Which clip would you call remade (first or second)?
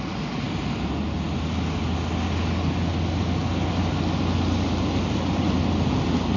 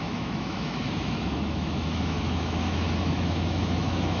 second